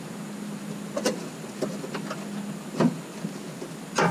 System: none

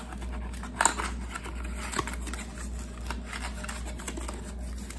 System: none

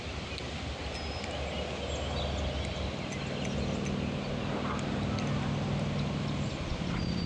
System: none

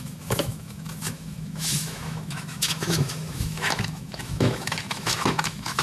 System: autoencoder, DAC-VAE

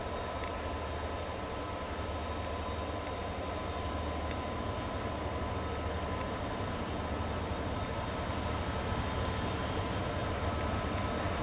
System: none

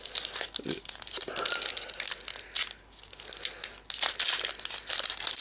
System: none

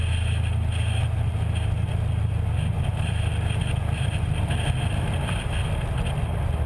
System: none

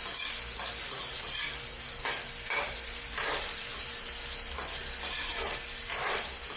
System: none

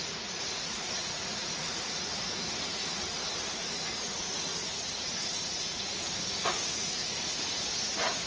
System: vocoder, Vocos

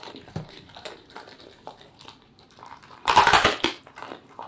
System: vocoder, BigVGAN v2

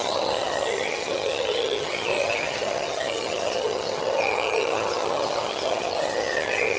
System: vocoder, HiFi-GAN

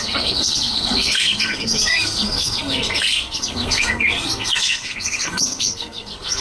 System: codec, SNAC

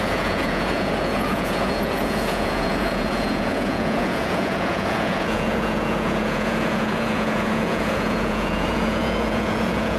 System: vocoder, Vocos